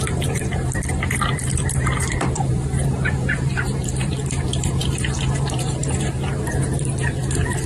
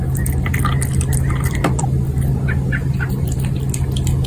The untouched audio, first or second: second